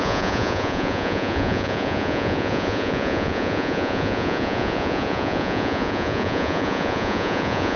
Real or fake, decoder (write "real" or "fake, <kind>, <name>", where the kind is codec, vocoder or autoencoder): fake, vocoder, Vocos